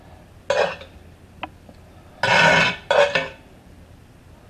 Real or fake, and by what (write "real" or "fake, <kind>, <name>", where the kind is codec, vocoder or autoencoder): real